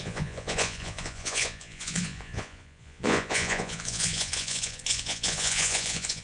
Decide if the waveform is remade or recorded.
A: remade